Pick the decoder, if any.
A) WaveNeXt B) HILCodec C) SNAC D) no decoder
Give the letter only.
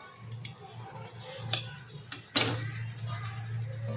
D